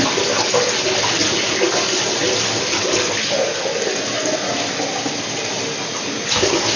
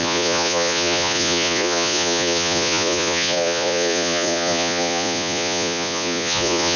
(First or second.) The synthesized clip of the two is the second